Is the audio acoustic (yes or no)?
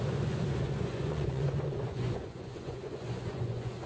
no